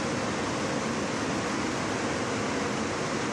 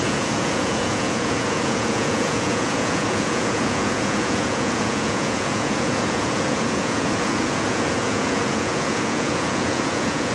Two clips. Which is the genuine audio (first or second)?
first